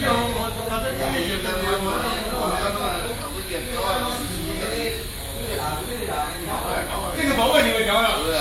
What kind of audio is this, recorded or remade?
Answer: remade